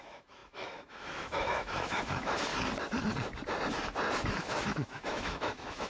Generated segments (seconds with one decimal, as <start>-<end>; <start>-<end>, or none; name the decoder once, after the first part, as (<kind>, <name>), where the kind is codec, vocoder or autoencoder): 0.0-2.5 (autoencoder, DAC-VAE); 4.3-5.9